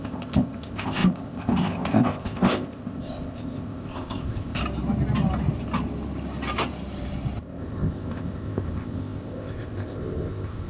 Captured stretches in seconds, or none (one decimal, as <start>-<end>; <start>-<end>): 4.6-7.4